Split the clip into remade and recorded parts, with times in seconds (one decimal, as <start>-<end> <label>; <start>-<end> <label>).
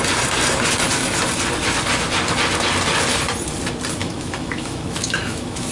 0.0-4.0 recorded; 4.0-5.7 remade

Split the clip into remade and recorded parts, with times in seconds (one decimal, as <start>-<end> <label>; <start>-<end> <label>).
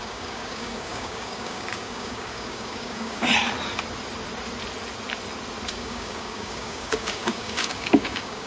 0.0-3.3 remade; 3.3-5.7 recorded; 5.7-8.5 remade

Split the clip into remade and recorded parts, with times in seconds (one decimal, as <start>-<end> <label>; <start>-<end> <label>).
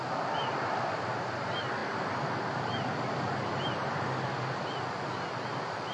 0.0-5.9 recorded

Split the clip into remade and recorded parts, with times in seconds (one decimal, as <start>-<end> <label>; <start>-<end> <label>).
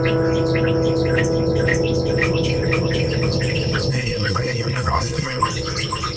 0.0-3.9 recorded; 3.9-5.4 remade; 5.4-6.2 recorded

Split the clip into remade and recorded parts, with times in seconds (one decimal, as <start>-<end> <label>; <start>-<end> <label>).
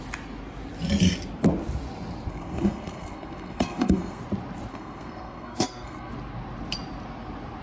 0.0-2.3 recorded; 2.3-4.2 remade; 4.2-4.7 recorded; 4.7-6.1 remade; 6.1-7.6 recorded